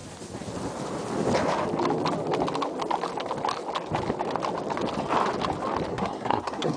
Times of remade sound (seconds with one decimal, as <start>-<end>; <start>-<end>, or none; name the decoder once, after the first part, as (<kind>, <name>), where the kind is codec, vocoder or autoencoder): 5.9-6.8 (codec, SNAC)